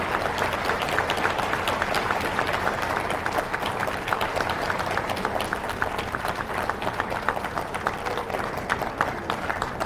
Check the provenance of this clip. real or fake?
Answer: real